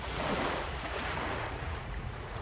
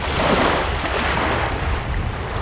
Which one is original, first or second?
second